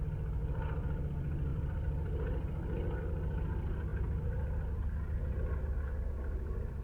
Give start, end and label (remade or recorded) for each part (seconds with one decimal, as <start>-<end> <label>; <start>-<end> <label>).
0.0-0.4 recorded; 0.4-1.1 remade; 1.1-1.5 recorded; 1.5-3.0 remade; 3.0-6.8 recorded